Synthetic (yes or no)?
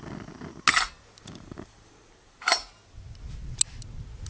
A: no